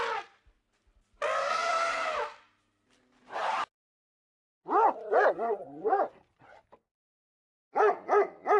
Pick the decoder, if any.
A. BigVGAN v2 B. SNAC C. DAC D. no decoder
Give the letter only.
D